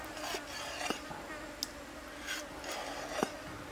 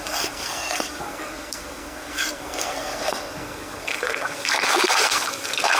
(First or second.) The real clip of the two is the first